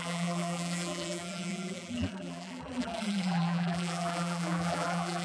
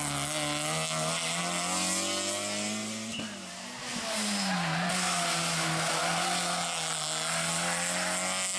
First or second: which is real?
second